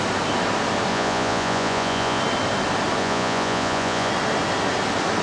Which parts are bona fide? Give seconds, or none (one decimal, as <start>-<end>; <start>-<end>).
0.0-0.9; 2.2-3.0; 4.1-5.2